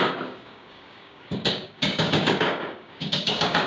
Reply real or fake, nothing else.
fake